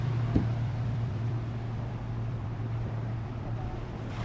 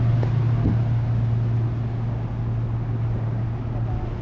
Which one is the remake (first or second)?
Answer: first